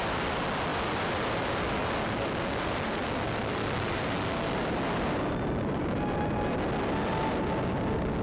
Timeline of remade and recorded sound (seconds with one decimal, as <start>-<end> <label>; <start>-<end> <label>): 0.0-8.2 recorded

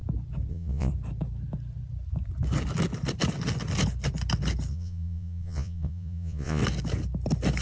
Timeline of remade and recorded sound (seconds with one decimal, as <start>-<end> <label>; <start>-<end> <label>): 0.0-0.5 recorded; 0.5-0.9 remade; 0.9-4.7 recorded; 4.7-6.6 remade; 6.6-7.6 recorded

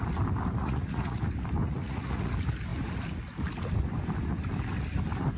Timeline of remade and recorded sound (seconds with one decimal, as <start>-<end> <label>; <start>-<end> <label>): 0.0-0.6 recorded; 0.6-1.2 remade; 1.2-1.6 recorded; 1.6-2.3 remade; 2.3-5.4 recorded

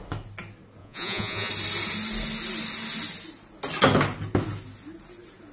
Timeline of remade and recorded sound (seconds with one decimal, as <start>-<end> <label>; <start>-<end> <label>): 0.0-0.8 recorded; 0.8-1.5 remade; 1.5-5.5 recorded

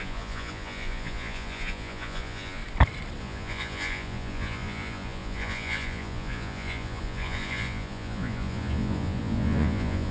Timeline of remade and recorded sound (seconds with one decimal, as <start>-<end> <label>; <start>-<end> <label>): 0.0-2.6 remade; 2.6-3.2 recorded; 3.2-10.1 remade

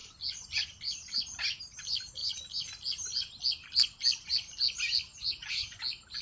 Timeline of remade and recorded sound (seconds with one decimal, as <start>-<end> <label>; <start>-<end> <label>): 0.0-5.1 recorded; 5.1-5.8 remade; 5.8-6.2 recorded

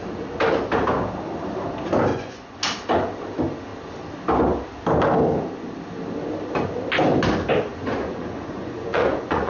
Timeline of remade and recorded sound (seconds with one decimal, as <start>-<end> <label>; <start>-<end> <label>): 0.0-2.1 recorded; 2.1-2.6 remade; 2.6-7.7 recorded; 7.7-9.5 remade

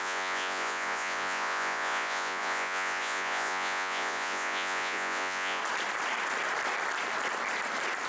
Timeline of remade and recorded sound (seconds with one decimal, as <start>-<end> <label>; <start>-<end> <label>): 0.0-5.6 remade; 5.6-8.1 recorded